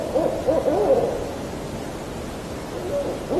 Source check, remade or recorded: recorded